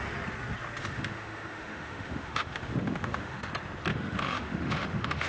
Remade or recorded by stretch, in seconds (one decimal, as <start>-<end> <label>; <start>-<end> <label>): 0.0-0.8 recorded; 0.8-3.5 remade; 3.5-3.9 recorded; 3.9-5.3 remade